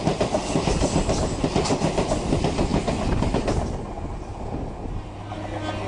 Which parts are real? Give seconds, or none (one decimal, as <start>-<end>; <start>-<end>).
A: 0.0-5.9